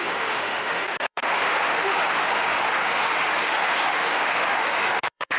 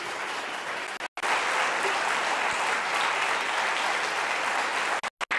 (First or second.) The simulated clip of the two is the first